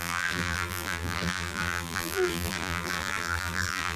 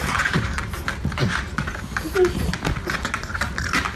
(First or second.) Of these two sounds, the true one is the second